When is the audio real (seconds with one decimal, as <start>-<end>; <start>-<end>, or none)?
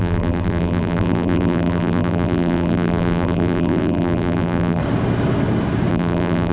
4.8-5.9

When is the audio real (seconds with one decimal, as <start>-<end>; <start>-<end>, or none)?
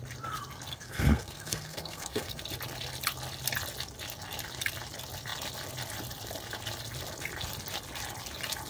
0.0-0.7; 2.4-8.7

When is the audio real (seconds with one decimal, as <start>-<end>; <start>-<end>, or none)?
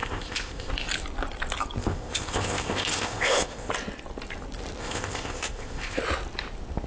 0.7-1.8; 3.7-4.8; 6.0-6.9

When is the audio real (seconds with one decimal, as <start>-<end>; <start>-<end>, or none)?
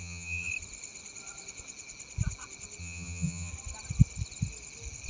0.5-2.8; 3.5-5.1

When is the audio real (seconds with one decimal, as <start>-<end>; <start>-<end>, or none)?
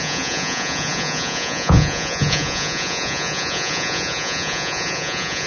none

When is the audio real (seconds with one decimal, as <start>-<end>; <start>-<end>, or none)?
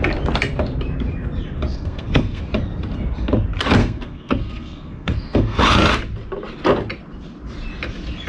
0.0-1.7; 2.4-3.8; 5.6-8.3